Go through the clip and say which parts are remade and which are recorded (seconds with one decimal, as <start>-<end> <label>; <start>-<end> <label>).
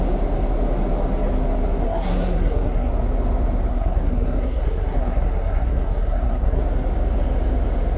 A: 0.0-1.8 recorded; 1.8-2.9 remade; 2.9-3.7 recorded; 3.7-6.6 remade; 6.6-8.0 recorded